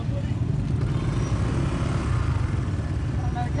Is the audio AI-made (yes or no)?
no